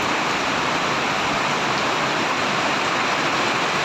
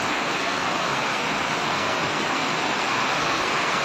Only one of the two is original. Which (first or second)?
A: first